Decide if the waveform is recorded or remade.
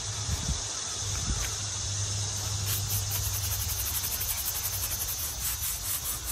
recorded